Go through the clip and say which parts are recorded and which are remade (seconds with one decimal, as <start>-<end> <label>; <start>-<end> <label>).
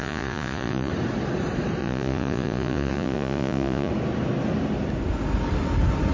0.0-0.9 remade; 0.9-1.8 recorded; 1.8-3.9 remade; 3.9-6.1 recorded